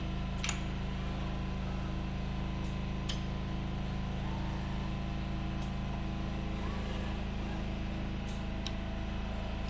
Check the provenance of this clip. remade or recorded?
recorded